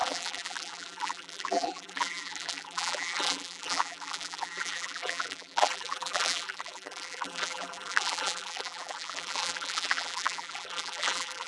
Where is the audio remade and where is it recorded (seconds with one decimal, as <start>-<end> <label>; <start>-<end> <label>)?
0.0-11.5 remade